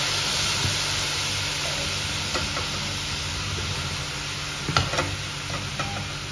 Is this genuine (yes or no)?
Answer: yes